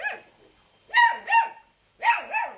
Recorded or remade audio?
recorded